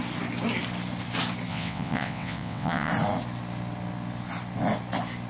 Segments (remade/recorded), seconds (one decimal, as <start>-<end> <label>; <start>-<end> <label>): 0.0-1.5 recorded; 1.5-2.9 remade; 2.9-5.3 recorded